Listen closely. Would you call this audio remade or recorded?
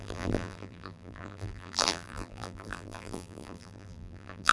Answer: remade